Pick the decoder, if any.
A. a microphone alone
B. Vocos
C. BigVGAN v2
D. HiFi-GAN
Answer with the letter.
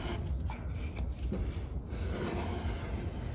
A